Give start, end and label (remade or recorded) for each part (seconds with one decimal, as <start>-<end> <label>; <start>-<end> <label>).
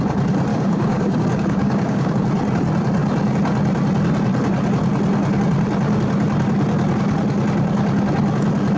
0.0-0.5 recorded; 0.5-2.1 remade; 2.1-8.8 recorded